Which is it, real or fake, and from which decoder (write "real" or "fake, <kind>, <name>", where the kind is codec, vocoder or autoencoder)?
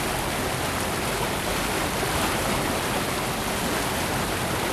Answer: real